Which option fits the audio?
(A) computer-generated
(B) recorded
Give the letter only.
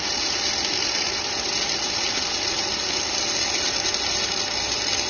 B